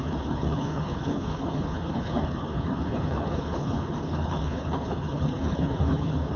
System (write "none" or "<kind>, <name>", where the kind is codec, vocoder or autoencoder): codec, HILCodec